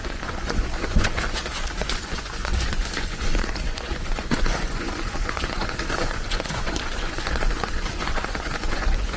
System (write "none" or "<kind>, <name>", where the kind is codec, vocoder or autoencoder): vocoder, Vocos